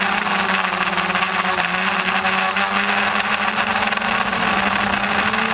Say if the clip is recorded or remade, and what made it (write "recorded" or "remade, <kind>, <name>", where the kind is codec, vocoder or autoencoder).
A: recorded